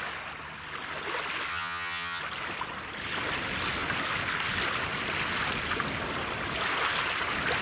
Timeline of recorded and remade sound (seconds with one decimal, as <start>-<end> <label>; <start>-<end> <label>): 0.0-1.5 recorded; 1.5-2.2 remade; 2.2-7.6 recorded